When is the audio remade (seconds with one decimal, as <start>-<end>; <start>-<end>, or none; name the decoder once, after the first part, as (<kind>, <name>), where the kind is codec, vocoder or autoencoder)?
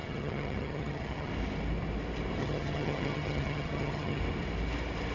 0.0-1.3 (vocoder, HiFi-GAN); 2.4-4.2